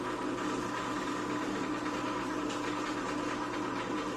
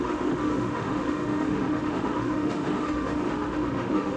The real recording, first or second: first